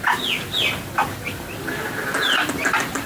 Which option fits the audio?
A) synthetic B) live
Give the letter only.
B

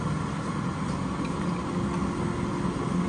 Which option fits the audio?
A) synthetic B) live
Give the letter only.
B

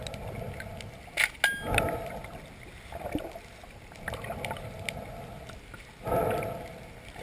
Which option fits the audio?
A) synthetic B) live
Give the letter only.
B